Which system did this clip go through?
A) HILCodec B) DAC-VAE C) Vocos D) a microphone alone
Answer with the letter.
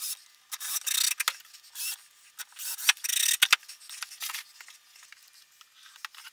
D